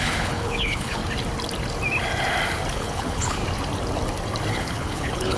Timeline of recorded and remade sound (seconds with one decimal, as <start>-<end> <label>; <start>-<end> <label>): 0.0-1.0 remade; 1.0-2.7 recorded; 2.7-3.4 remade; 3.4-4.5 recorded; 4.5-5.4 remade